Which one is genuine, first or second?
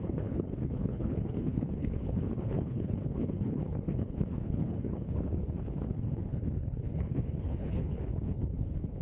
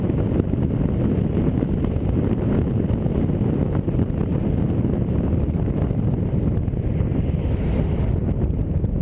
second